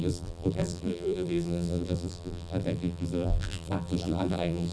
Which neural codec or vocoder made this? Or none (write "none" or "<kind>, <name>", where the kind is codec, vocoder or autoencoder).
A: vocoder, BigVGAN v2